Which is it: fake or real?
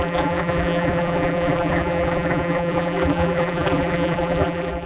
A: fake